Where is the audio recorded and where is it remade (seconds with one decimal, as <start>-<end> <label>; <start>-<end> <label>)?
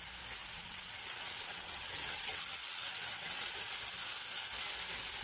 0.0-0.4 recorded; 0.4-3.5 remade; 3.5-5.2 recorded